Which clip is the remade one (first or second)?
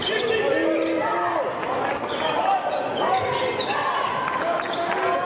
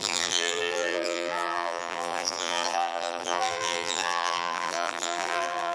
second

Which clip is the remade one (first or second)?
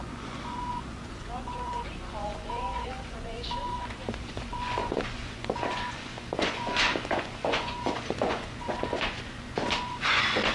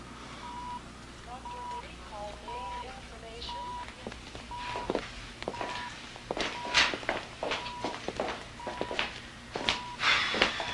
first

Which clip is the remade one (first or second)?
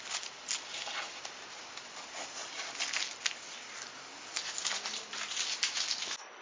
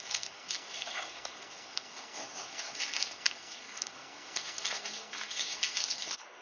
second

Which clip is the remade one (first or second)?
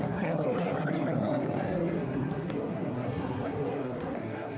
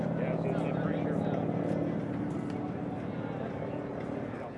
first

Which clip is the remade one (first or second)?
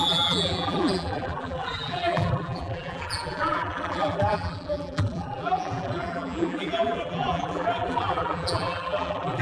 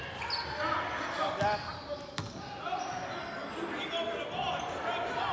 first